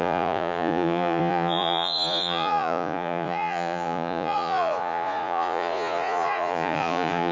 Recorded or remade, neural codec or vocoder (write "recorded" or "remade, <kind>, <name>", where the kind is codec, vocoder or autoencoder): remade, vocoder, Vocos